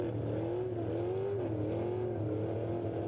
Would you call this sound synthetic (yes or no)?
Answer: no